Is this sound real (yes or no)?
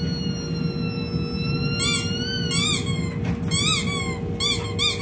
yes